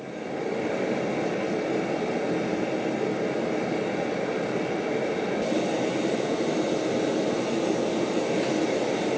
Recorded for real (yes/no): yes